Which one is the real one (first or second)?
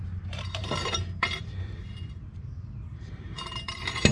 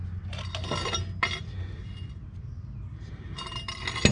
second